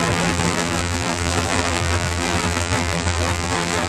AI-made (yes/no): yes